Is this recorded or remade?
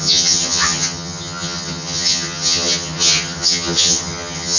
remade